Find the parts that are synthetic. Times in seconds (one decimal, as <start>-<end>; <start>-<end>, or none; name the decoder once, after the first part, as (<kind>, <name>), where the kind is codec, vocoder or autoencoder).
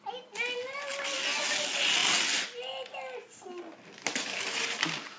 none